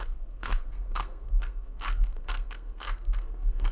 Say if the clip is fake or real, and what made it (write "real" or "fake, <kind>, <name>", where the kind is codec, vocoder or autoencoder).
fake, codec, SNAC